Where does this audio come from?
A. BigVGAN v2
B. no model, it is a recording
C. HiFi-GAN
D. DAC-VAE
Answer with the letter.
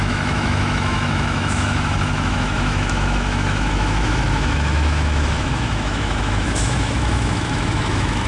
D